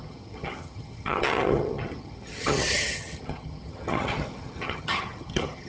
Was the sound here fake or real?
fake